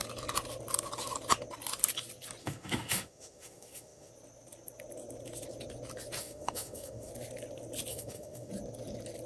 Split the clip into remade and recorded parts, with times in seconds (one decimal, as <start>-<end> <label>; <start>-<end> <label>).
0.0-2.4 recorded; 2.4-4.1 remade; 4.1-6.2 recorded; 6.2-7.1 remade; 7.1-7.9 recorded; 7.9-8.5 remade; 8.5-9.3 recorded